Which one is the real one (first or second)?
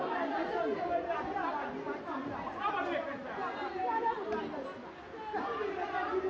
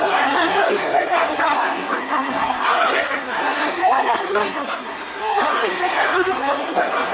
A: first